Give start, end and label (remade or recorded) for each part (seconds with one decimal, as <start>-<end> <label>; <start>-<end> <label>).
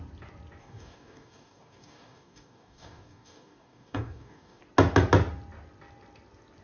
0.0-0.6 recorded; 0.6-4.6 remade; 4.6-6.6 recorded